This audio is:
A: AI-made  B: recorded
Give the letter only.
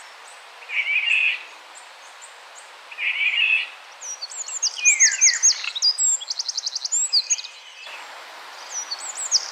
B